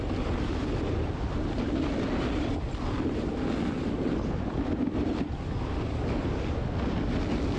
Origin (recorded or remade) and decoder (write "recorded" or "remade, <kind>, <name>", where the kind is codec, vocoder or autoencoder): recorded